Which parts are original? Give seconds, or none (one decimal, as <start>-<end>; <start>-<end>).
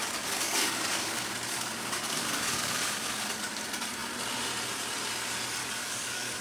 3.6-5.6